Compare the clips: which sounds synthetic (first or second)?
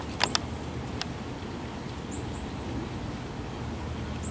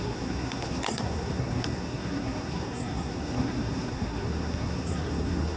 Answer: second